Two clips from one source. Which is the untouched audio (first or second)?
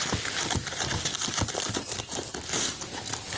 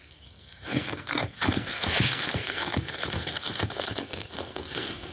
first